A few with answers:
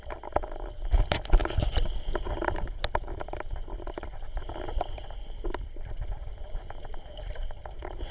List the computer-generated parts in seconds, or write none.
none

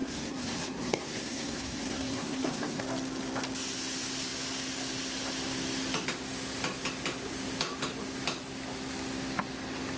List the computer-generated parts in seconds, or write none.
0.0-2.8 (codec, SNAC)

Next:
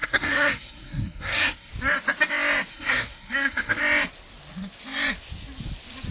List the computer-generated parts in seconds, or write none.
0.0-1.7 (codec, SNAC); 2.7-3.8

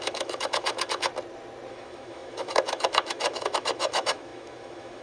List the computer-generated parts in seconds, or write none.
0.0-1.1 (autoencoder, DAC-VAE); 1.7-5.0

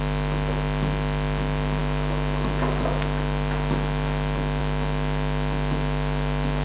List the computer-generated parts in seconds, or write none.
none

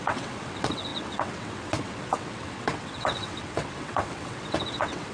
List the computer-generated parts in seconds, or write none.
0.0-5.1 (vocoder, WaveNeXt)

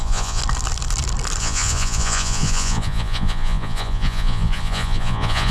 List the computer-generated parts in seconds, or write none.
0.0-0.4 (vocoder, Vocos); 1.4-5.5

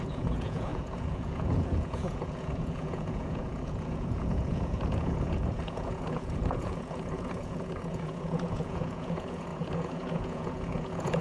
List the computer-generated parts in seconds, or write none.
0.0-11.2 (vocoder, Vocos)